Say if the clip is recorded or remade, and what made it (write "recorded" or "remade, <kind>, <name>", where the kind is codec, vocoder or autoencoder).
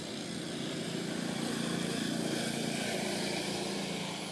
recorded